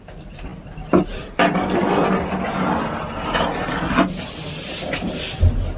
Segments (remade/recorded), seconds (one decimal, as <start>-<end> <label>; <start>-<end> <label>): 0.0-4.5 recorded; 4.5-5.2 remade; 5.2-5.8 recorded